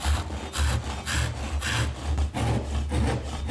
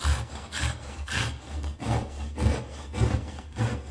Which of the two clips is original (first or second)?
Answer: first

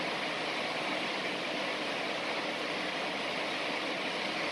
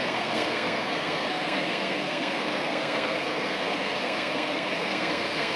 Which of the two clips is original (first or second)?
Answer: first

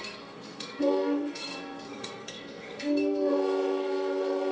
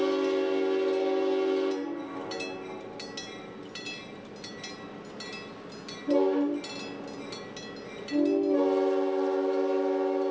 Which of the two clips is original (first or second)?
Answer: second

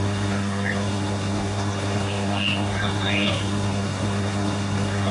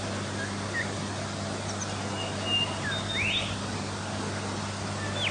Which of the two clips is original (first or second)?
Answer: second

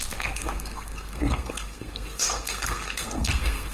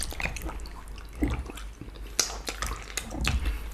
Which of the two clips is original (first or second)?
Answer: second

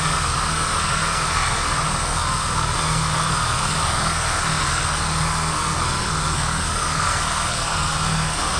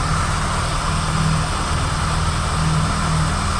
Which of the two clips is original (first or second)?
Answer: second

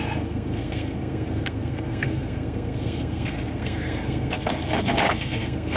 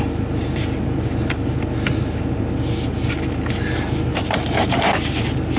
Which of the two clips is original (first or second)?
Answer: second